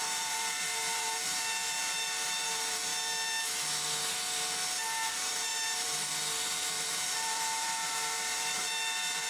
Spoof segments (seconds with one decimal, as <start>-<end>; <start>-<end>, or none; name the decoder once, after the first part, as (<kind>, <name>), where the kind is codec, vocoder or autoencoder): 0.0-2.9 (vocoder, BigVGAN v2); 5.1-9.3